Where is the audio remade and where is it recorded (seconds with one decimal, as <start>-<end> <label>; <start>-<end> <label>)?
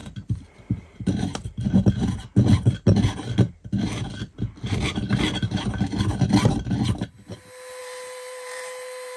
0.0-7.8 recorded; 7.8-9.2 remade